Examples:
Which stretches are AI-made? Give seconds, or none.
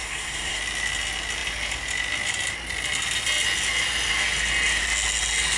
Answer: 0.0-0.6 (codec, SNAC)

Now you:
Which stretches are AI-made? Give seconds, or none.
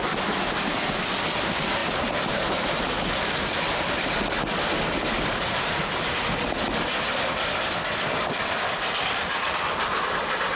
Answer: none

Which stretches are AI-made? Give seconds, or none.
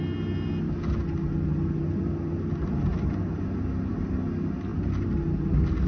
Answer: none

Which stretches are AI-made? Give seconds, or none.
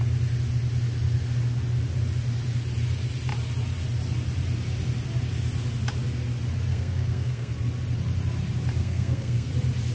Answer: 6.7-7.5 (codec, SNAC); 8.8-9.5